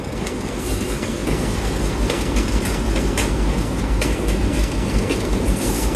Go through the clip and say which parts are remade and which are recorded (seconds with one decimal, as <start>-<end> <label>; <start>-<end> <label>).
0.0-6.0 remade